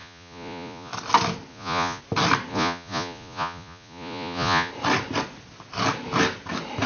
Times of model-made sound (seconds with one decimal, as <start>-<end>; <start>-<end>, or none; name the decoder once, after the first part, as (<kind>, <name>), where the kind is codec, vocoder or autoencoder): 0.0-0.9 (vocoder, Vocos); 1.5-2.0; 2.5-4.7